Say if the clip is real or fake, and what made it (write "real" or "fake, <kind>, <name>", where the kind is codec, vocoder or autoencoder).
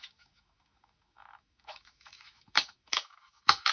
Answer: fake, autoencoder, DAC-VAE